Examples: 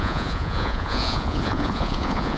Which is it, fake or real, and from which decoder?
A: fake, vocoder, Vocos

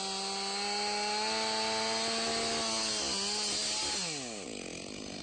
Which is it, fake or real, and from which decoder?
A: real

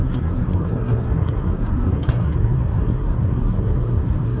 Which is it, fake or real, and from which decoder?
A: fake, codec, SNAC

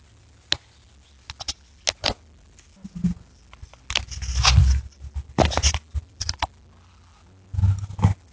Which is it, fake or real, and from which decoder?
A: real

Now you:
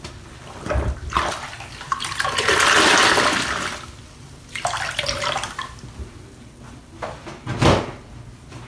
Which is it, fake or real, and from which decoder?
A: real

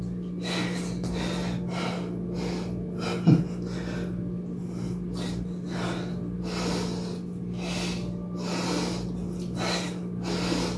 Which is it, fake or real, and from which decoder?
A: real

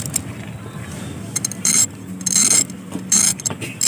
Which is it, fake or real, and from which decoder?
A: real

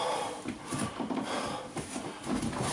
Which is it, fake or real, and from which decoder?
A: real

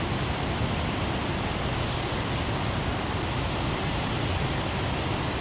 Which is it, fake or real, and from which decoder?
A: real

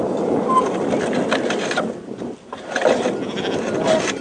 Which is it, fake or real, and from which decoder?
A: real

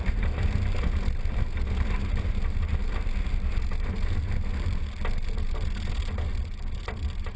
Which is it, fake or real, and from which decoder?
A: real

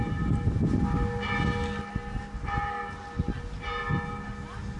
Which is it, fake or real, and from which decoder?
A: real